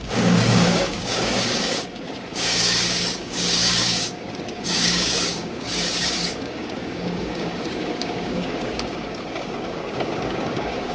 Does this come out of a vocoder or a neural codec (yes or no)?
yes